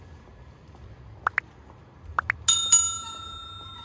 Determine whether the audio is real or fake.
real